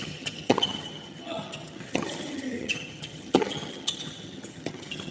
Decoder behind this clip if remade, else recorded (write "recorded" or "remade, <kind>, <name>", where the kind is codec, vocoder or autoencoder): remade, vocoder, HiFi-GAN